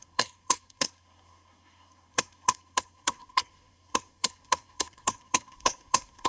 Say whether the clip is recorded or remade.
remade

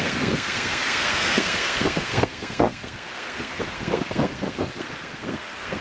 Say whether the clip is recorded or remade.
remade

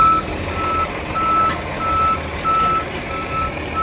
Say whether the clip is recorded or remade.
recorded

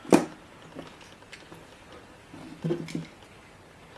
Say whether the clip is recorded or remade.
recorded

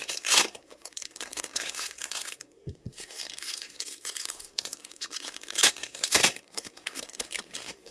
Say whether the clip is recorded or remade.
remade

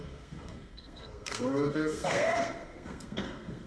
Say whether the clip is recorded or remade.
remade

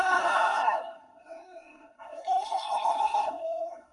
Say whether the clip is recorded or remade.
remade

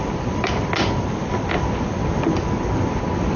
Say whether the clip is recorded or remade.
recorded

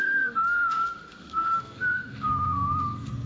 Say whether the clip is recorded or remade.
remade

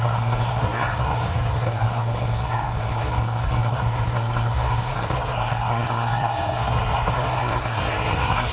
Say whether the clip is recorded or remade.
remade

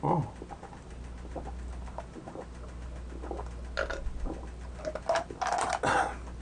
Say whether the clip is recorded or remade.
recorded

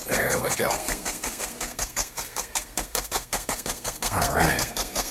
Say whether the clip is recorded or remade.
remade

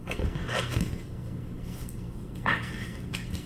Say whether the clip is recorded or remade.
remade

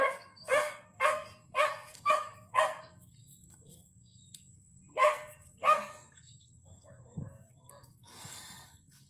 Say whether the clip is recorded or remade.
remade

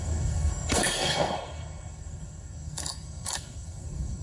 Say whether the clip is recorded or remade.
remade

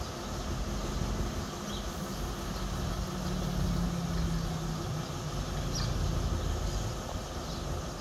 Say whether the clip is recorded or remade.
recorded